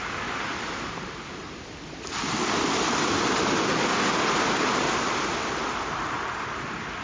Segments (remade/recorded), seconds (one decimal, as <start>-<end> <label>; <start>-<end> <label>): 0.0-7.0 recorded